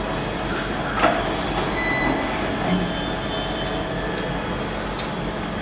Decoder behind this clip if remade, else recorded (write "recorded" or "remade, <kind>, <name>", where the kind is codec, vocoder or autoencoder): recorded